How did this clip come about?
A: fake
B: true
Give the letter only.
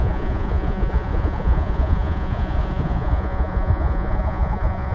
A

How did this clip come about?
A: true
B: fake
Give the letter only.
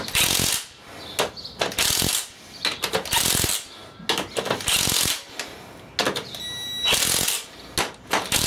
A